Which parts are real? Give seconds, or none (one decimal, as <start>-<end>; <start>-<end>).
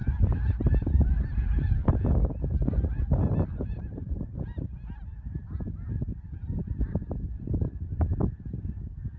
1.9-9.2